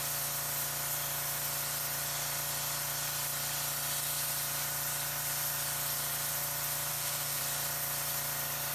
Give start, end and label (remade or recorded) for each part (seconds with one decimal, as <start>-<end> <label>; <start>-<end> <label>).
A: 0.0-6.9 recorded; 6.9-7.4 remade; 7.4-8.7 recorded